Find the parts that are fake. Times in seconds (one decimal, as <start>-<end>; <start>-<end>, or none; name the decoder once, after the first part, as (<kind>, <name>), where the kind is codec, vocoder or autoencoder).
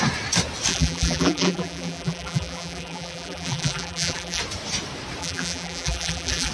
0.7-4.4 (vocoder, BigVGAN v2); 5.2-6.5